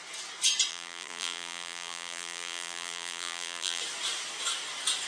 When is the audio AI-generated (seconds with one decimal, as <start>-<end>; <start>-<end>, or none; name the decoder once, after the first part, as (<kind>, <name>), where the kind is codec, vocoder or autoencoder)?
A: 0.7-3.8 (vocoder, BigVGAN v2)